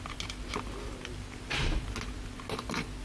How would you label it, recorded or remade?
recorded